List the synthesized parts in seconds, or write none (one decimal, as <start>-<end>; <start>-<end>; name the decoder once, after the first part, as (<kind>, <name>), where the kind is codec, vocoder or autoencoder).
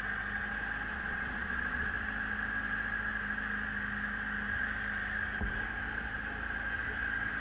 0.9-1.9 (vocoder, Vocos)